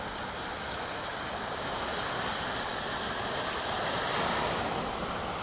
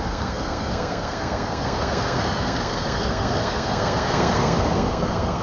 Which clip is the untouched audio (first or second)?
first